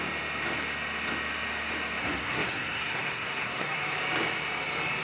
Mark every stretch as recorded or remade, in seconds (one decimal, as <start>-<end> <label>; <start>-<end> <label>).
0.0-2.0 recorded; 2.0-3.8 remade; 3.8-5.0 recorded